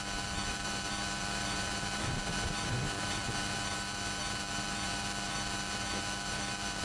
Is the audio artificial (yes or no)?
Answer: yes